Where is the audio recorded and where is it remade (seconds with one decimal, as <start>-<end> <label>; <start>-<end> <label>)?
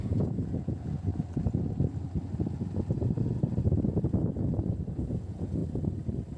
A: 0.0-1.1 remade; 1.1-4.9 recorded; 4.9-5.6 remade; 5.6-6.4 recorded